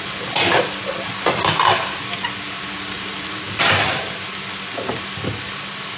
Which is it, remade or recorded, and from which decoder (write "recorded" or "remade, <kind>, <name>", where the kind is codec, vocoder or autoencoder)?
recorded